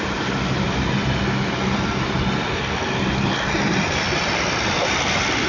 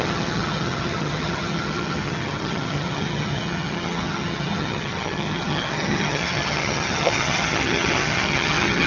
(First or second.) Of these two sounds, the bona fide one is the first